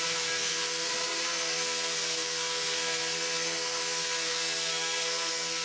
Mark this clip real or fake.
fake